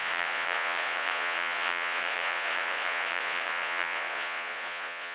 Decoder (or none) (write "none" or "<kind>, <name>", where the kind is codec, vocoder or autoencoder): vocoder, Vocos